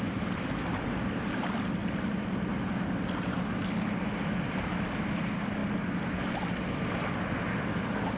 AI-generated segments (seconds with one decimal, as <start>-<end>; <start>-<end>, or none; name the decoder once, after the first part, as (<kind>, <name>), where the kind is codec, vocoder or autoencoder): 0.0-1.8 (vocoder, BigVGAN v2); 3.3-5.6; 7.6-8.2